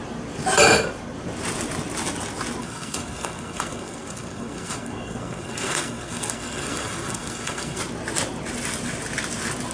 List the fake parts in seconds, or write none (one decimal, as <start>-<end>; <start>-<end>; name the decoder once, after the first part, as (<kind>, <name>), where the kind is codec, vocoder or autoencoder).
2.6-7.8 (codec, SNAC)